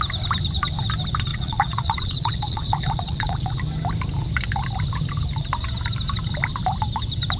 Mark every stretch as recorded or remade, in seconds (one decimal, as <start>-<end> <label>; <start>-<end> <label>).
0.0-1.3 recorded; 1.3-3.6 remade; 3.6-7.4 recorded